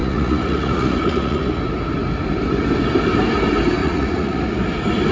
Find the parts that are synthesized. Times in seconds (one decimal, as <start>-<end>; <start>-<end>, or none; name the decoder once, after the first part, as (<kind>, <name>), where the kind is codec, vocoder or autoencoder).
0.0-1.6 (vocoder, Vocos); 3.8-4.4

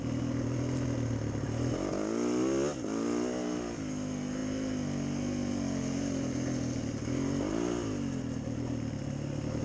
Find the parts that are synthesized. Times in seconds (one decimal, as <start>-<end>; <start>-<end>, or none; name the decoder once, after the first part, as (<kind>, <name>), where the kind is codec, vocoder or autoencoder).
none

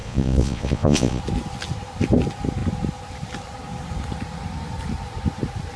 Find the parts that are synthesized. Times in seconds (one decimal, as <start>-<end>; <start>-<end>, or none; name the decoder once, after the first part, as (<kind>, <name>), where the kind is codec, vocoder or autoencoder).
0.0-1.2 (vocoder, Vocos)

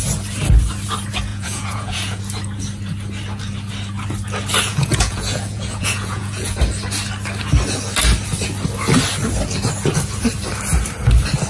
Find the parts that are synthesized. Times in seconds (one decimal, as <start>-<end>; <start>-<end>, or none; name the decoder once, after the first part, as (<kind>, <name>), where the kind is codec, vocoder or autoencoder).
1.3-2.2 (vocoder, Vocos); 4.7-6.6

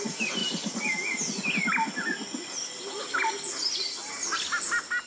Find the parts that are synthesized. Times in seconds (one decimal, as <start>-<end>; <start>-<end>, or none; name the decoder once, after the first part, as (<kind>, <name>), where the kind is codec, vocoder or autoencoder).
none

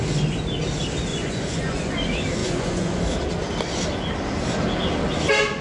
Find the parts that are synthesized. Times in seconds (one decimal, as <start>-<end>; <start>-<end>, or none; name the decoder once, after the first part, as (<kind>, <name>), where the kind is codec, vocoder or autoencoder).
1.1-1.9 (vocoder, Vocos); 2.4-3.0

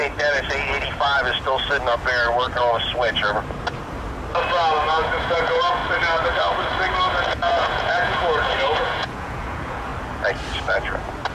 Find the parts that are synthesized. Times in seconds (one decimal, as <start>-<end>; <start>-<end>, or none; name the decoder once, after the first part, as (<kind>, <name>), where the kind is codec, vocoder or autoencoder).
4.9-5.8 (vocoder, Vocos); 7.1-9.9

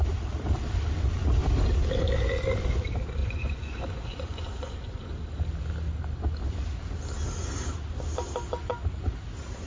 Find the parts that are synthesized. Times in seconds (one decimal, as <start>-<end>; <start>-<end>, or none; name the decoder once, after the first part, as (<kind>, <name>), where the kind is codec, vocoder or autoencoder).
3.2-5.1 (vocoder, Vocos)